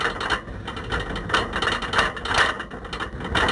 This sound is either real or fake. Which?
real